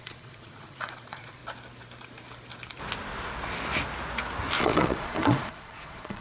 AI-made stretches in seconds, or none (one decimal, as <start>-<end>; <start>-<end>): 0.0-1.4; 4.6-6.2

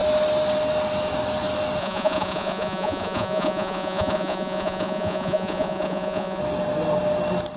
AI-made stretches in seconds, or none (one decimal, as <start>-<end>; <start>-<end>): 1.8-6.4

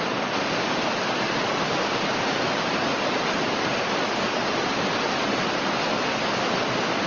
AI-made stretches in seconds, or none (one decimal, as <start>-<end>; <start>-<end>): none

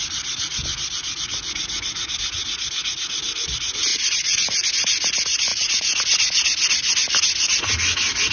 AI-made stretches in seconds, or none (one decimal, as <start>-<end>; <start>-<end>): 3.9-4.7; 5.5-6.0